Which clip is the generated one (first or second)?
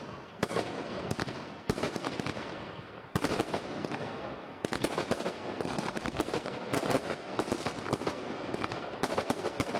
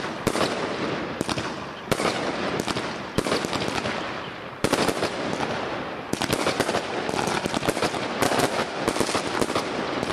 first